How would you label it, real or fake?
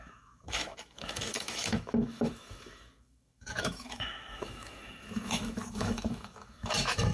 fake